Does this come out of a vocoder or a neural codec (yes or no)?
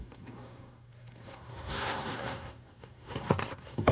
yes